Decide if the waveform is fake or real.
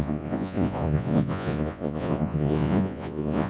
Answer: fake